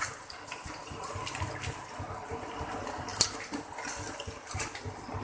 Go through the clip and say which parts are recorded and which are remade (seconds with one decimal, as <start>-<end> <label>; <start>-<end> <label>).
0.0-5.2 recorded